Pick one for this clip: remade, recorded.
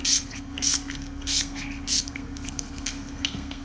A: remade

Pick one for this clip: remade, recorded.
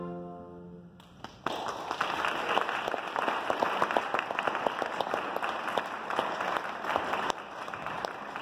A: recorded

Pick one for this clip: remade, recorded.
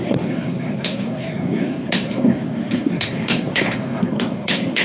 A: remade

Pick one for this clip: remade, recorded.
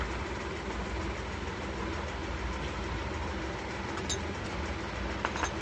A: recorded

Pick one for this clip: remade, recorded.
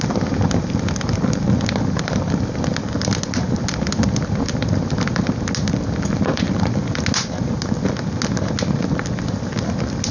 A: recorded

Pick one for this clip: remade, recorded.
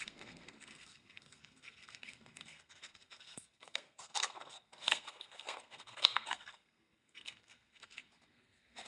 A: remade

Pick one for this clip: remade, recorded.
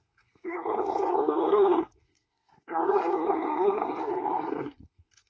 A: remade